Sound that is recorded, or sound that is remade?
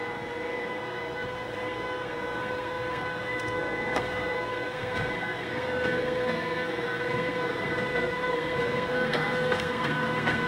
remade